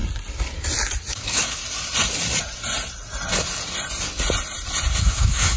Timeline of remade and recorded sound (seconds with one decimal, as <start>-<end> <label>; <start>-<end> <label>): 0.0-1.1 recorded; 1.1-1.6 remade; 1.6-5.0 recorded; 5.0-5.6 remade